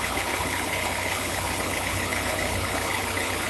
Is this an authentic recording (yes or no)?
no